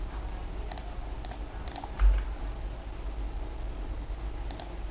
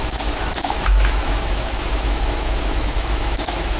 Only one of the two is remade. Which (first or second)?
second